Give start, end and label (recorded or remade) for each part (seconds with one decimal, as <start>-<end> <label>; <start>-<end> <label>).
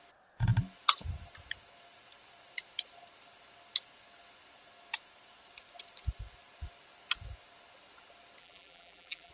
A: 0.0-8.4 recorded; 8.4-9.3 remade